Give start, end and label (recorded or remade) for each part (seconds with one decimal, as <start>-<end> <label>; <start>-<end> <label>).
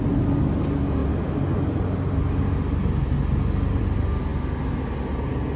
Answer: 0.0-5.6 recorded